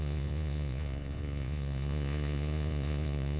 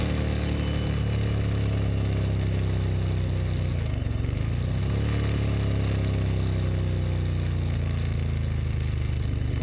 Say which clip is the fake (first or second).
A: first